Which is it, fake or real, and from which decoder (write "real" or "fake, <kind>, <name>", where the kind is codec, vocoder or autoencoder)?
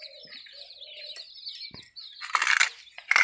real